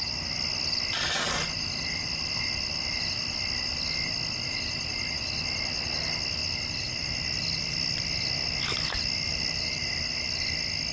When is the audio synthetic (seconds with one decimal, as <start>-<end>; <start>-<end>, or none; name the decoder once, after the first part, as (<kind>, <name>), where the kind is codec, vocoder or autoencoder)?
none